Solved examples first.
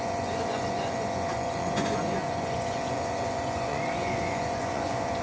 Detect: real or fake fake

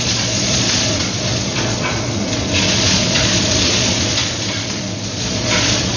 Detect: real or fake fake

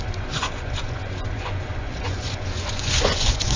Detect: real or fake fake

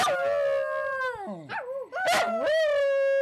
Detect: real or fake real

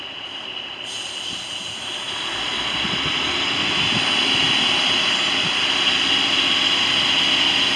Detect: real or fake real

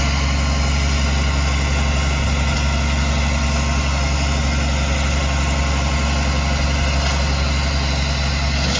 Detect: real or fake real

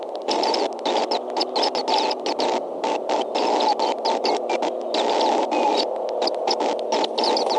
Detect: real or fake real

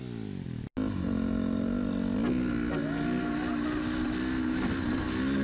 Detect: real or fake real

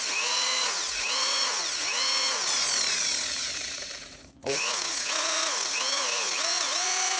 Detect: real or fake fake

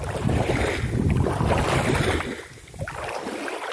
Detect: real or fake real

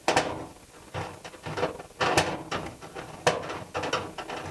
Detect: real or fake real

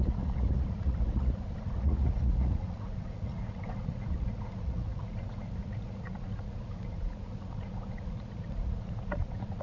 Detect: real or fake fake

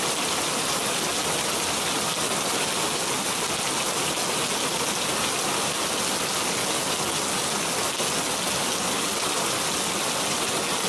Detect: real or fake real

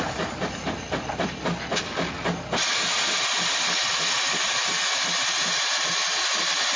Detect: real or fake real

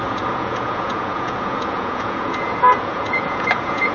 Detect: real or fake fake